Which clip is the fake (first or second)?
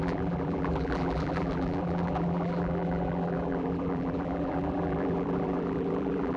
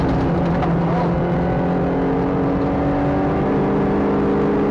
first